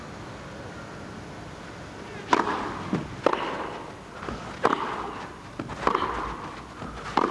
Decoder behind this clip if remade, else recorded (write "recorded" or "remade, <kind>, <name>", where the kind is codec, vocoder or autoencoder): recorded